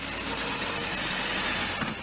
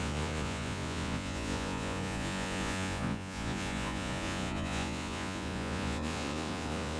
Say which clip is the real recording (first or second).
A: first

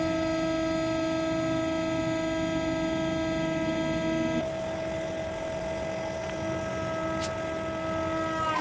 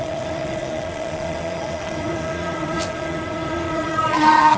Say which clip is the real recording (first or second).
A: first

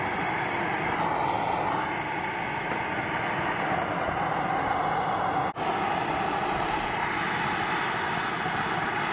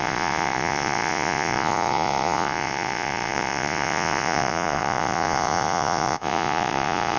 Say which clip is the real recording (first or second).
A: first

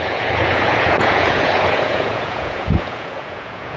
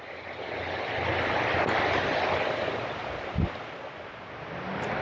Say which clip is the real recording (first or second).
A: second